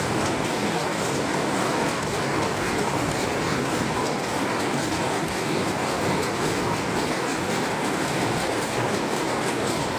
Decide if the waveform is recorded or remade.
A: remade